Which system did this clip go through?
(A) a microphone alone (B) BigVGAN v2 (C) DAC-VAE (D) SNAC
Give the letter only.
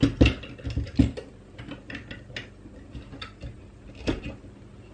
A